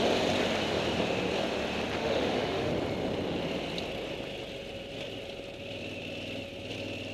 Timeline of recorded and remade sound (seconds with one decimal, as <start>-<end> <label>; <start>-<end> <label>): 0.0-2.0 recorded; 2.0-2.7 remade; 2.7-7.1 recorded